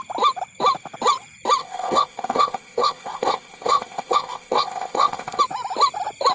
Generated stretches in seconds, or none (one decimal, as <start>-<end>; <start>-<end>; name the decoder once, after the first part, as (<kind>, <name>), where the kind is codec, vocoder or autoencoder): 1.6-5.4 (codec, ZipCodec)